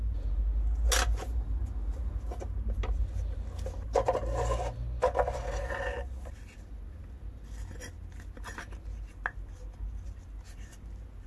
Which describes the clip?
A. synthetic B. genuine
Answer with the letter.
B